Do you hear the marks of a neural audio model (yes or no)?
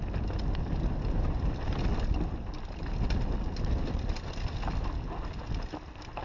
no